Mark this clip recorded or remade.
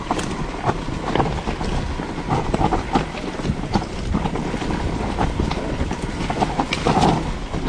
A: recorded